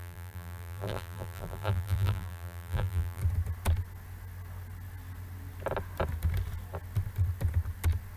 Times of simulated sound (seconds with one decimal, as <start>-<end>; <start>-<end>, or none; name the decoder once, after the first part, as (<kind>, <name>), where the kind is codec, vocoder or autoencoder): 0.0-3.2 (vocoder, BigVGAN v2)